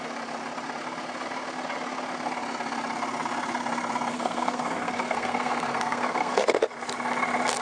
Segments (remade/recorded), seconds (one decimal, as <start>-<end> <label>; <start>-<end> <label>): 0.0-4.1 recorded; 4.1-6.6 remade; 6.6-7.6 recorded